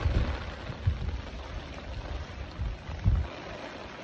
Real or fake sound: real